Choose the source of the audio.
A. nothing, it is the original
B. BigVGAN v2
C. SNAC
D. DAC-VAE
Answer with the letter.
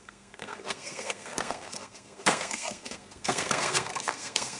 C